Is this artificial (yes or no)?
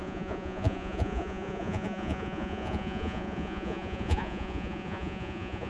yes